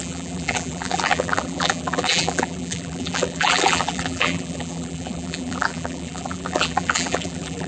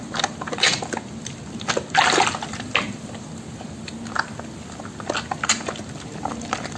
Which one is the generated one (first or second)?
first